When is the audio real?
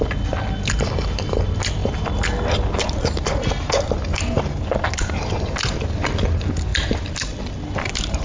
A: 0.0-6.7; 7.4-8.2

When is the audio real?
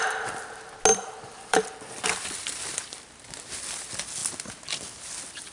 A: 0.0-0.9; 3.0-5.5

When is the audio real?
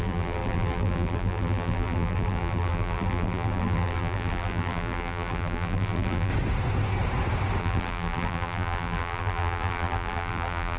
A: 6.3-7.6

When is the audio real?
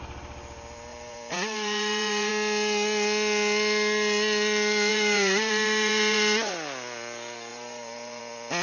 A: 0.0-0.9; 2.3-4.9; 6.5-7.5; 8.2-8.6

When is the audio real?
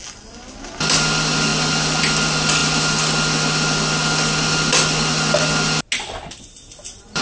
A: 0.0-7.2